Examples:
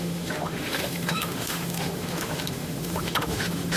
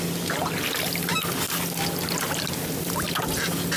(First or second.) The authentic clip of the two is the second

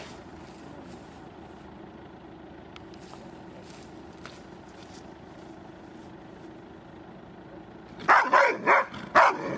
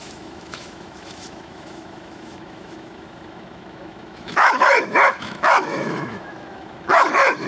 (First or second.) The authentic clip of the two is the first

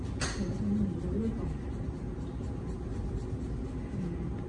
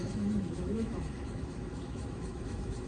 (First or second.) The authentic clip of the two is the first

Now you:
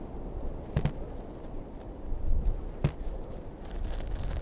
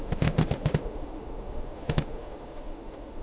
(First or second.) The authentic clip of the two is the first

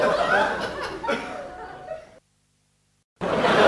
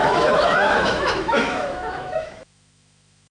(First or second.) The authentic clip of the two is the first